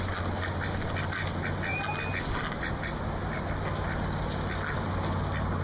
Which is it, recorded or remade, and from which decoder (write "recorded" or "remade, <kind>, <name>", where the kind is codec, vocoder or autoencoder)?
recorded